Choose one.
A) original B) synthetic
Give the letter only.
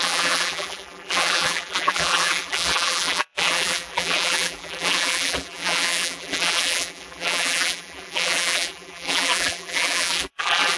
B